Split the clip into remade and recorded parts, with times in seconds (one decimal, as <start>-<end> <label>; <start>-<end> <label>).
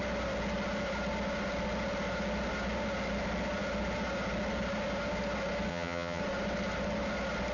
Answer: 0.0-5.7 recorded; 5.7-6.2 remade; 6.2-7.5 recorded